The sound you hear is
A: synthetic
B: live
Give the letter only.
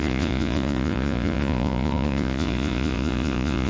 A